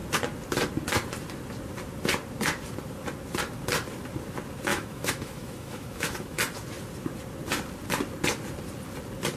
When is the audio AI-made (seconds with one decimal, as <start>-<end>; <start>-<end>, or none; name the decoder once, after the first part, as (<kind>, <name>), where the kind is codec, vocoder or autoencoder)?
4.7-6.4 (autoencoder, DAC-VAE)